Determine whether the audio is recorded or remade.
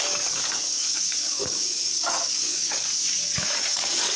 remade